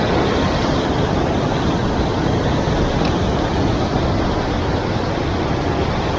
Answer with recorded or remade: recorded